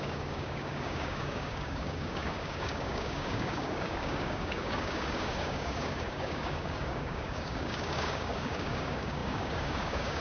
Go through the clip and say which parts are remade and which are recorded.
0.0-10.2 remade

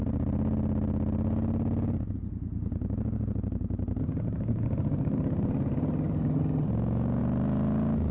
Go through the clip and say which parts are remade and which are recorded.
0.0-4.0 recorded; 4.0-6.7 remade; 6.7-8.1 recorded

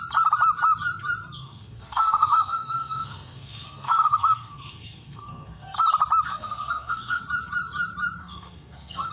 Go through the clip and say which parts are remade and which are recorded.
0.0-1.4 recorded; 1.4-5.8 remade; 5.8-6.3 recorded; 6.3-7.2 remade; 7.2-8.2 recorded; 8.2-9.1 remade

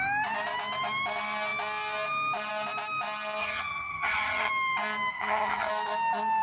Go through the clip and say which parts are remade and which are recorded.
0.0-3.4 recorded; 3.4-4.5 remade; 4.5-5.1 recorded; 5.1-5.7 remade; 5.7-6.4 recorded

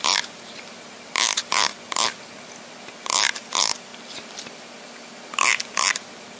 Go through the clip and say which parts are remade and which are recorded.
0.0-6.4 recorded